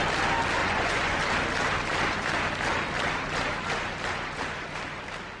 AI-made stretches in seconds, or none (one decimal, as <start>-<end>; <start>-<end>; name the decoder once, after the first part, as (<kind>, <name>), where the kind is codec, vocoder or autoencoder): 0.6-1.2 (vocoder, Vocos)